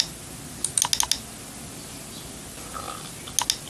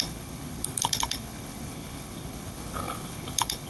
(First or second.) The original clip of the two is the first